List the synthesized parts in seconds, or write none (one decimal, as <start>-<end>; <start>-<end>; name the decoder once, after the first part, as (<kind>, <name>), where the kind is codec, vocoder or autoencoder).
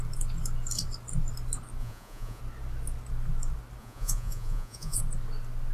1.8-2.4 (vocoder, Vocos); 3.8-5.0